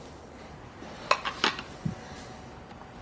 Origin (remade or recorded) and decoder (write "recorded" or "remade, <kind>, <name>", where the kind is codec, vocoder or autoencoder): recorded